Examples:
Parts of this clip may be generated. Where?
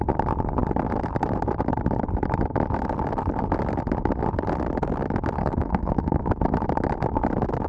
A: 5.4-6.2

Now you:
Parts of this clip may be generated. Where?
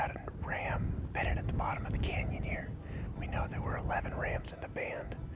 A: none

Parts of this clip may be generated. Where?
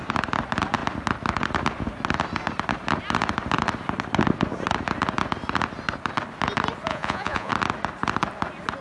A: 6.9-7.5